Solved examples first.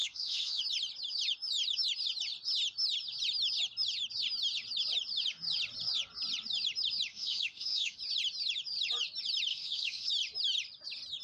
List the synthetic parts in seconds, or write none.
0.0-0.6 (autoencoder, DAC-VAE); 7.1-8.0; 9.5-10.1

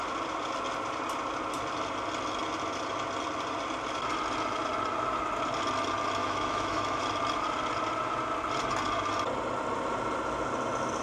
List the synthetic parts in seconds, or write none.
6.2-7.0 (autoencoder, DAC-VAE)

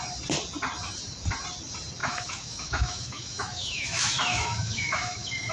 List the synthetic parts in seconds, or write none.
2.0-5.5 (autoencoder, DAC-VAE)

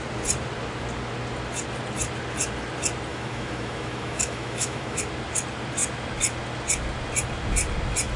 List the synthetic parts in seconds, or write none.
3.1-5.0 (autoencoder, DAC-VAE)

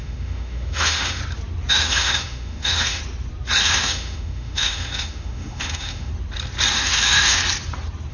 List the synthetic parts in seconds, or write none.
0.0-1.2 (autoencoder, DAC-VAE); 1.7-3.0; 3.6-6.1; 6.7-7.4